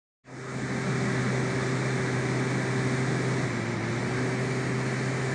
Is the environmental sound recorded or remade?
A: recorded